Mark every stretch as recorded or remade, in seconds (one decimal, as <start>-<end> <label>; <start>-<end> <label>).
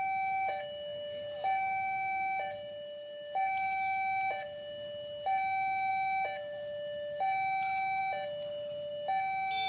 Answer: 0.0-9.7 recorded